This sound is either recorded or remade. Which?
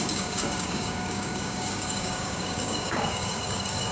remade